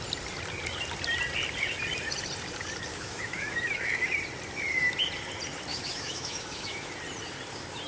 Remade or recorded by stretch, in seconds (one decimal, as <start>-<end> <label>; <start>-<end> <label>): 0.0-2.9 recorded; 2.9-4.1 remade; 4.1-5.7 recorded; 5.7-6.9 remade; 6.9-7.9 recorded